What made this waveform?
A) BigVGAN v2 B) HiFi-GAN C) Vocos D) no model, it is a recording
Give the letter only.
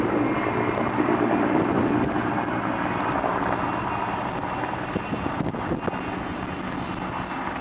D